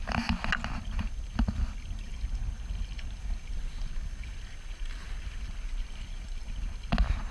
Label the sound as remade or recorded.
recorded